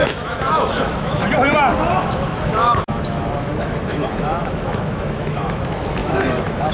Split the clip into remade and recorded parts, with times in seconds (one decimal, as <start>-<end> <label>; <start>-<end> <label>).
0.0-1.2 remade; 1.2-2.0 recorded; 2.0-6.7 remade